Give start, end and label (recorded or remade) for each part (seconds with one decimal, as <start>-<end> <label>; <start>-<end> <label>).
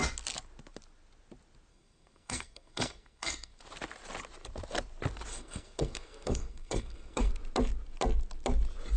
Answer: 0.0-1.7 recorded; 1.7-3.6 remade; 3.6-5.3 recorded; 5.3-7.3 remade; 7.3-9.0 recorded